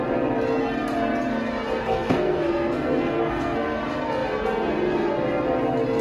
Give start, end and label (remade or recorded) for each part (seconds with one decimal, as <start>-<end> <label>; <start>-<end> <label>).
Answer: 0.0-1.8 recorded; 1.8-3.8 remade; 3.8-6.0 recorded